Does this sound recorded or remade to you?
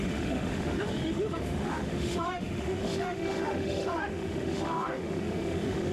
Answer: remade